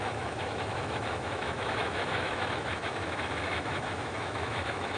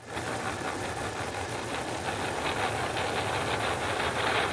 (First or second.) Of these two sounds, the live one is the second